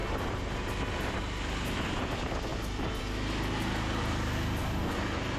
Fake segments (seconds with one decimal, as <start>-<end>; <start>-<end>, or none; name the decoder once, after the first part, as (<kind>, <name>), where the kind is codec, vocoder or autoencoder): none